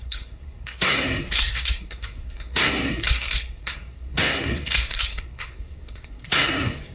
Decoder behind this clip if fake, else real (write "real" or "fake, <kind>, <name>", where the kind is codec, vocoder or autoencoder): fake, codec, SNAC